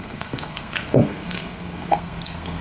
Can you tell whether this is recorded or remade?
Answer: remade